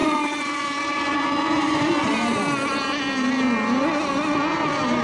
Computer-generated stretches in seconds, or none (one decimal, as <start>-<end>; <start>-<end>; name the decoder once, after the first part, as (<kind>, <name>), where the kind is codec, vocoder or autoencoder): 0.0-1.9 (vocoder, Vocos)